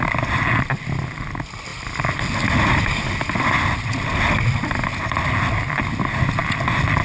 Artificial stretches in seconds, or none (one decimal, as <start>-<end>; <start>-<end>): none